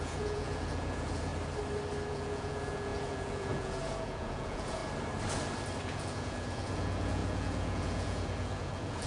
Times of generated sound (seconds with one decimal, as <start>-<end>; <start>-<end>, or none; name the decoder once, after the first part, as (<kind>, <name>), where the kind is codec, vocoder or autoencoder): 0.0-1.3 (vocoder, Vocos); 2.1-4.8; 5.8-9.1